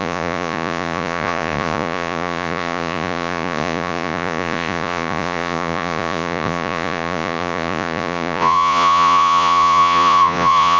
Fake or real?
fake